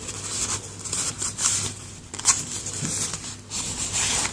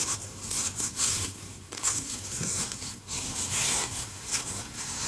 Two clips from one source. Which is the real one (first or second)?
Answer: first